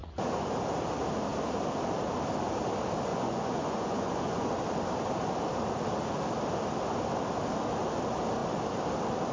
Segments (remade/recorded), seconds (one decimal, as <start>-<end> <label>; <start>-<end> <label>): 0.0-0.5 remade; 0.5-3.1 recorded; 3.1-4.5 remade; 4.5-9.3 recorded